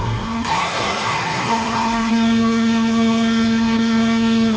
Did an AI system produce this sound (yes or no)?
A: yes